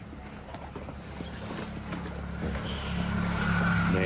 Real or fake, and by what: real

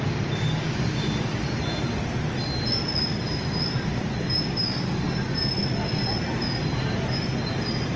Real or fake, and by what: real